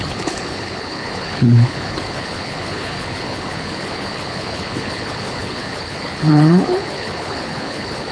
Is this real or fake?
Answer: fake